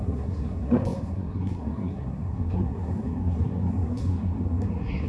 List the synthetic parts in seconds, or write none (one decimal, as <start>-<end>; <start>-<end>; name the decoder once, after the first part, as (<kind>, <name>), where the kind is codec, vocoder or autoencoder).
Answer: 0.0-5.1 (codec, SNAC)